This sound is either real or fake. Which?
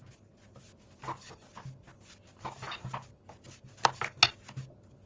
real